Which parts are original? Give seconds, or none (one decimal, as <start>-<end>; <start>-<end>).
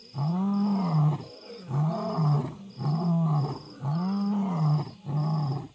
0.0-5.7